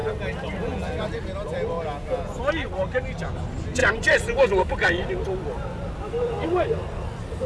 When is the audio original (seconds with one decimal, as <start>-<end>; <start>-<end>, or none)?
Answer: 0.0-7.5